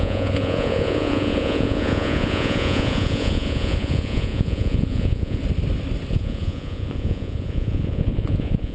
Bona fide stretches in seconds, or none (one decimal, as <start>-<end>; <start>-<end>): 5.4-6.1